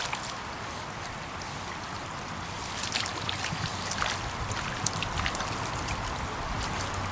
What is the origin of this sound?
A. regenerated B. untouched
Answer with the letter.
B